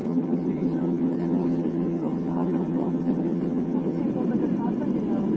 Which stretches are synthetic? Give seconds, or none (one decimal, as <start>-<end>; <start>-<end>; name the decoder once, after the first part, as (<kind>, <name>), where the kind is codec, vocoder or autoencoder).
0.0-4.0 (vocoder, HiFi-GAN)